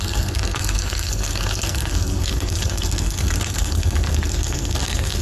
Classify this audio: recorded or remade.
remade